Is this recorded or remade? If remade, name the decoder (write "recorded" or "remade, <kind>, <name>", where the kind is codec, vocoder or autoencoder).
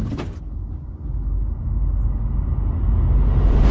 recorded